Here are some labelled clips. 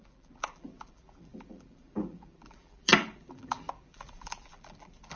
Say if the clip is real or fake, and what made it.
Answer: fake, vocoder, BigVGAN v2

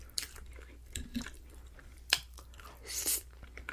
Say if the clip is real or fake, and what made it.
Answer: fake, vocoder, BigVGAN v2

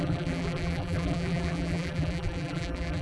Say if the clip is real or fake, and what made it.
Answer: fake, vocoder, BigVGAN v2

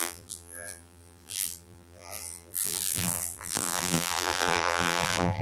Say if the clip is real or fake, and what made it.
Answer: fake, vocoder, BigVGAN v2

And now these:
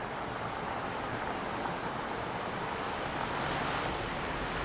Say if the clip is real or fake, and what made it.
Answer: fake, vocoder, BigVGAN v2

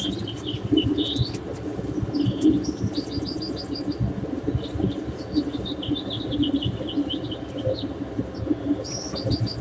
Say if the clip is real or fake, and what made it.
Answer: real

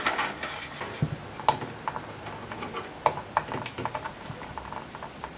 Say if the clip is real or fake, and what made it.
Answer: real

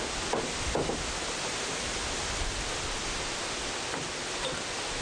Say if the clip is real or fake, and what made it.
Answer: real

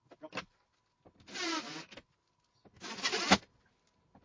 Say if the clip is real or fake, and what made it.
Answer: real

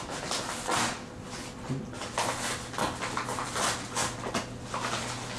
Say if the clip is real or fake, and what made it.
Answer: real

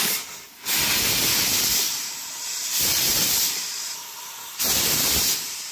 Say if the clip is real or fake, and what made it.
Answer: fake, vocoder, BigVGAN v2